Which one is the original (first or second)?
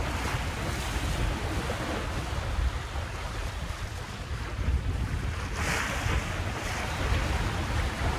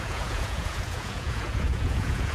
first